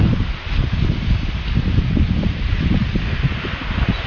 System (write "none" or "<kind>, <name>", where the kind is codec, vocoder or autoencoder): none